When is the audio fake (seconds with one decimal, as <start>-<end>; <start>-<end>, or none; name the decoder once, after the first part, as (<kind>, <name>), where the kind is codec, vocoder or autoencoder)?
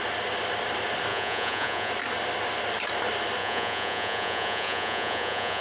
1.1-1.9 (vocoder, Vocos); 3.4-5.6